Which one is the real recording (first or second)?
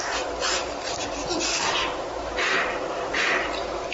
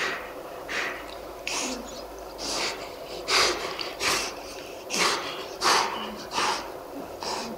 first